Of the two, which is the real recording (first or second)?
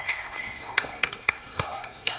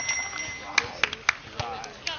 second